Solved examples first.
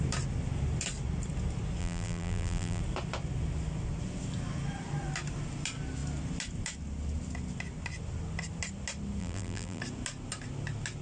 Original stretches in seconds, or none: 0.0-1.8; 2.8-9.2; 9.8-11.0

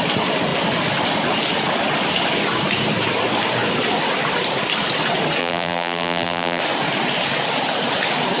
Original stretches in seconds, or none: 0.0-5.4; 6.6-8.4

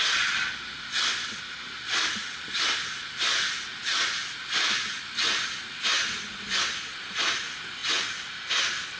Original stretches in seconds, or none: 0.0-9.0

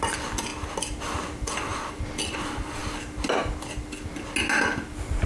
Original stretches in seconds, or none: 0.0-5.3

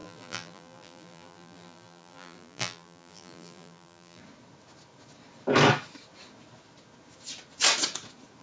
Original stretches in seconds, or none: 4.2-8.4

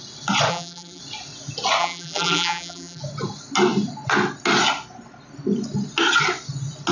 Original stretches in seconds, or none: 0.0-0.5; 1.0-1.8; 3.0-6.9

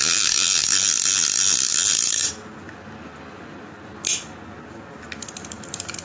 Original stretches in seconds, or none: 0.0-1.7; 2.3-6.0

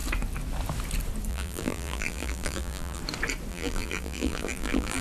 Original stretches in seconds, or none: 0.0-1.3; 3.0-3.5